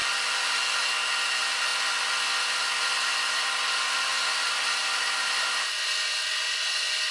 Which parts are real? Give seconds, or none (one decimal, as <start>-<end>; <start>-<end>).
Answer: 0.6-4.1; 5.7-7.1